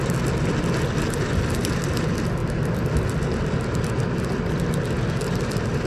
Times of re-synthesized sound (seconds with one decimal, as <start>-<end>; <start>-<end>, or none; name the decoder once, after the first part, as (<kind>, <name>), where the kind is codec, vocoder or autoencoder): none